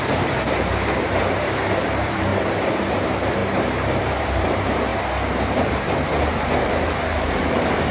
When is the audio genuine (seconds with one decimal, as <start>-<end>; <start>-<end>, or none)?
2.3-2.9; 4.9-5.6